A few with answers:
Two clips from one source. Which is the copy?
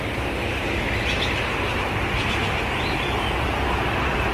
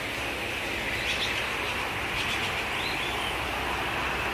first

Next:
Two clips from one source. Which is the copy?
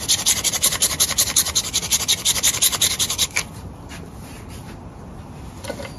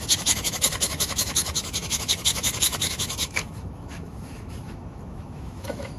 second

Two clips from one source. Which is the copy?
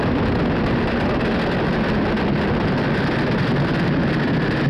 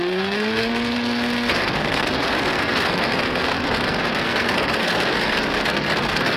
second